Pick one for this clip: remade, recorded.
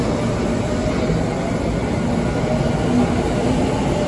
recorded